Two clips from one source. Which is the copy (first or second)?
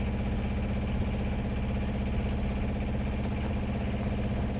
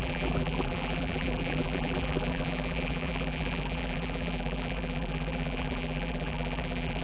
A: second